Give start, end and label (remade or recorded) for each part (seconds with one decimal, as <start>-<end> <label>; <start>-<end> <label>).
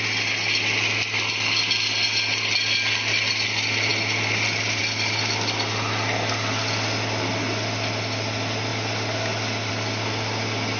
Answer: 0.0-10.8 recorded